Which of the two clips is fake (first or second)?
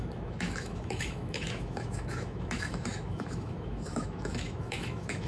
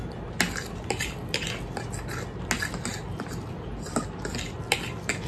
first